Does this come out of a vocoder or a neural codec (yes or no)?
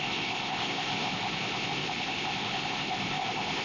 yes